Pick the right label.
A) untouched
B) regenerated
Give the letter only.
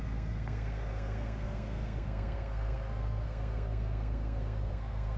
B